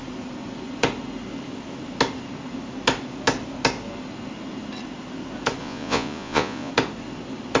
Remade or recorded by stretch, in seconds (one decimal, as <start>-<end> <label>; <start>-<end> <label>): 0.0-5.6 recorded; 5.6-6.7 remade; 6.7-7.6 recorded